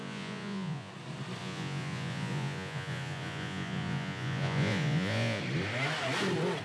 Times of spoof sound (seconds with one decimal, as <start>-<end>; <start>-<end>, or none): 0.0-0.9; 1.4-5.4